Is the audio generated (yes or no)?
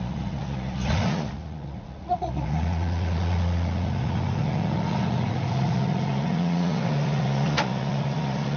yes